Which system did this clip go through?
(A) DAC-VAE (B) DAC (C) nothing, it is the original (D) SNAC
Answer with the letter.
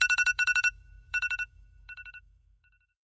A